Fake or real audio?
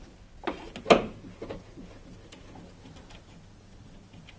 real